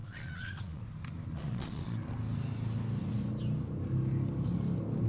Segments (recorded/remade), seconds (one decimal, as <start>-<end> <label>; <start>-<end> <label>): 0.0-0.8 remade; 0.8-1.3 recorded; 1.3-2.0 remade; 2.0-5.1 recorded